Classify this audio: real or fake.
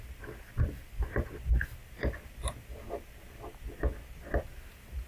real